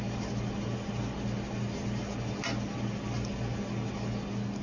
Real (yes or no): yes